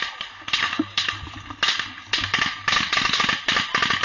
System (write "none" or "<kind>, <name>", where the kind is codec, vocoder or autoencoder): none